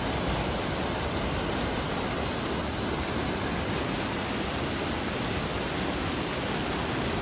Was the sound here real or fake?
real